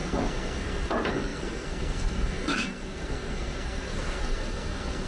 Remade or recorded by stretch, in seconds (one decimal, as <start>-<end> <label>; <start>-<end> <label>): 0.0-5.1 remade